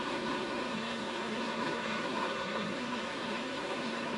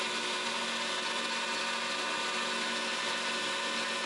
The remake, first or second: first